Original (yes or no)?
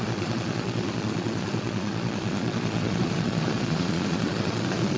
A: no